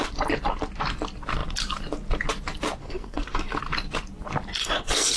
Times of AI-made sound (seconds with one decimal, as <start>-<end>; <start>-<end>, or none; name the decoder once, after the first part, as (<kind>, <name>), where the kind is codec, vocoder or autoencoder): 2.8-3.6 (codec, SNAC); 4.6-5.2

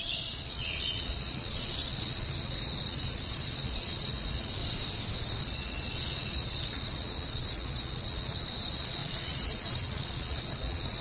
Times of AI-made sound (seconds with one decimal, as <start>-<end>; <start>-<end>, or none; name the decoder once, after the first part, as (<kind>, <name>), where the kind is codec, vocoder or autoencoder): 0.0-4.6 (vocoder, Vocos); 5.4-11.0